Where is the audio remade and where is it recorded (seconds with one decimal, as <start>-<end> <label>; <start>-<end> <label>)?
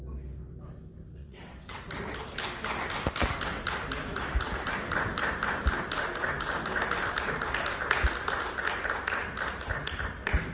0.0-1.2 recorded; 1.2-1.8 remade; 1.8-10.5 recorded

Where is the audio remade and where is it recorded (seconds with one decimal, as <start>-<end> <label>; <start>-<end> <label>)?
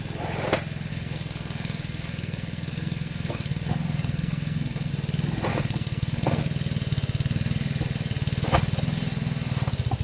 0.0-0.9 recorded; 0.9-4.9 remade; 4.9-5.5 recorded; 5.5-6.4 remade; 6.4-10.0 recorded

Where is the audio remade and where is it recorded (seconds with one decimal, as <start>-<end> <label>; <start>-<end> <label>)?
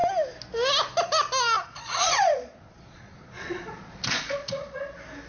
0.0-1.6 recorded; 1.6-4.8 remade; 4.8-5.3 recorded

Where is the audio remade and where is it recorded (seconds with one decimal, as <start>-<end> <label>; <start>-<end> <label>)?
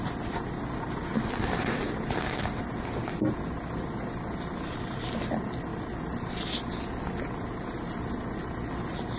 0.0-9.2 recorded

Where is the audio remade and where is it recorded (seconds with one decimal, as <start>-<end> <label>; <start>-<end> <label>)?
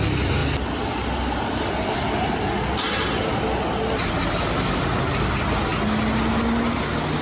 0.0-7.2 recorded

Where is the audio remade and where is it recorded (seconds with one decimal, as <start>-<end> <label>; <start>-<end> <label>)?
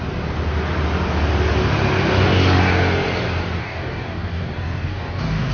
0.0-3.6 recorded; 3.6-5.5 remade